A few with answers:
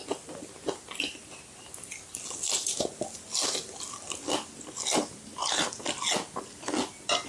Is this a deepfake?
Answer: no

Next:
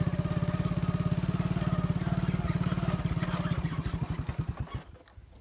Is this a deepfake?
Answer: no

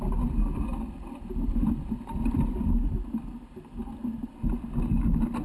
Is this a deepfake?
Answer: no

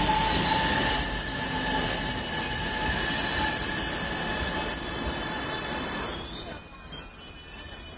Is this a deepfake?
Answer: no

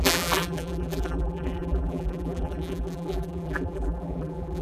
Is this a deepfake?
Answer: yes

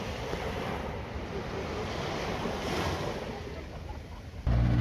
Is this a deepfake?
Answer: no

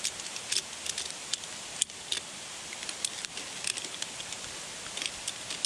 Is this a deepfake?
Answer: no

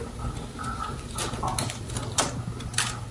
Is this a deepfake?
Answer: no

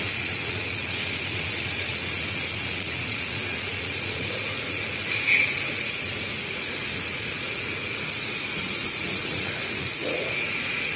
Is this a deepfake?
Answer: yes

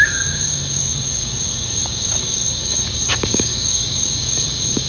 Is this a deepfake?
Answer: yes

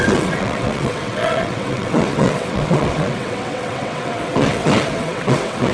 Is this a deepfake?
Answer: yes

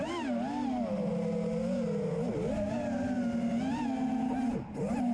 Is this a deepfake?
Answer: no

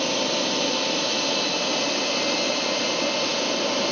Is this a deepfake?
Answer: no